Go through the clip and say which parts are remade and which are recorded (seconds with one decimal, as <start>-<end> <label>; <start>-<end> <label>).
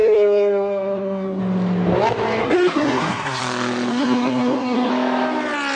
0.0-1.4 remade; 1.4-2.4 recorded; 2.4-3.4 remade; 3.4-3.9 recorded; 3.9-4.9 remade; 4.9-5.8 recorded